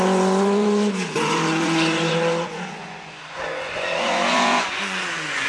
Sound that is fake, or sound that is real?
fake